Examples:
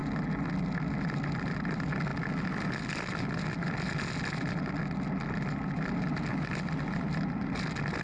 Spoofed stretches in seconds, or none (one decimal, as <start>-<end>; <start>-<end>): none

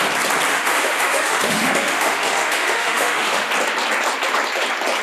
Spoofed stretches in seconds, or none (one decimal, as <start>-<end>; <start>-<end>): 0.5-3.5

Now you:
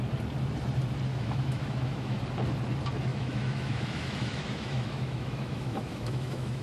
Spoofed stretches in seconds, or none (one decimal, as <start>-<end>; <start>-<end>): 1.1-2.2; 3.1-6.6

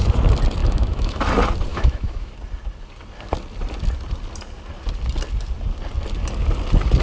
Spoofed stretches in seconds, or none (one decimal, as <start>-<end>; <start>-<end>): 0.6-1.2; 1.7-2.3

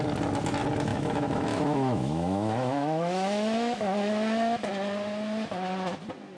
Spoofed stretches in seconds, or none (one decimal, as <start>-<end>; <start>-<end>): 0.9-4.7

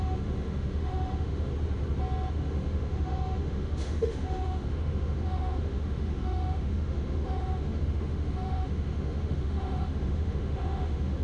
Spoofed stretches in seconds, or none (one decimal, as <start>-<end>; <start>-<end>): 0.0-1.5; 2.3-11.2

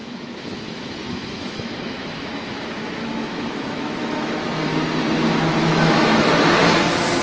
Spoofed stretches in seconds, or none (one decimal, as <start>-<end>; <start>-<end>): 0.0-4.3; 5.6-6.3

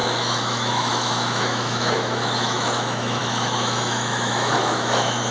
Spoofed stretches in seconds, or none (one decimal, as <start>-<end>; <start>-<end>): 0.0-5.3